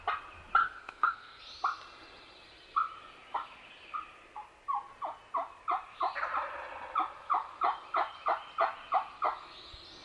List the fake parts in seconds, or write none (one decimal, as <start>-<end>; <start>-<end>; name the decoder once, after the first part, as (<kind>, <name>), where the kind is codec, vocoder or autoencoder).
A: 0.6-1.4 (codec, SNAC)